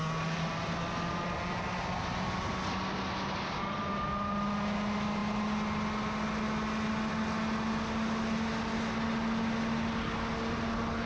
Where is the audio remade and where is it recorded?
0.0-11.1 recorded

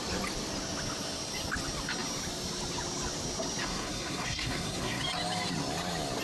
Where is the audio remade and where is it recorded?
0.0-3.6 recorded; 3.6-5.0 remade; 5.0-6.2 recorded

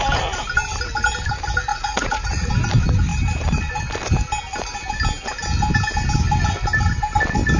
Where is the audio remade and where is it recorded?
0.0-1.7 recorded; 1.7-2.5 remade; 2.5-7.6 recorded